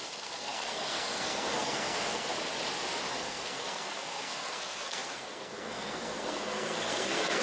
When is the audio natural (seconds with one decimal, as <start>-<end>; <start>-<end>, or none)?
2.3-3.1

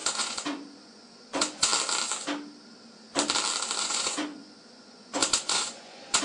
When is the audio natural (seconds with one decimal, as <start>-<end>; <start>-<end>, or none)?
1.7-3.8